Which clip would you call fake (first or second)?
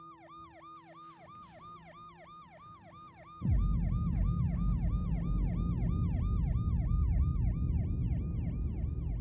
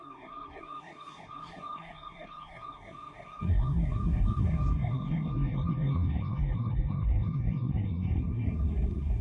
second